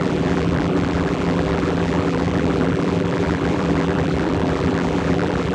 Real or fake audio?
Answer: fake